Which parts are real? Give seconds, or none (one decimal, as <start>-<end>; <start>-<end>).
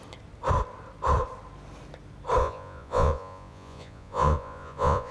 0.0-2.4